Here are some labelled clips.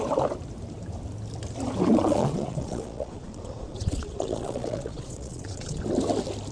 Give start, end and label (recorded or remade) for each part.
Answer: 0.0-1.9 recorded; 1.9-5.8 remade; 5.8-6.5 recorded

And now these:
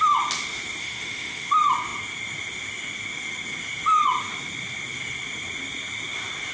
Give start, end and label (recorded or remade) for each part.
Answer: 0.0-0.8 recorded; 0.8-1.5 remade; 1.5-6.5 recorded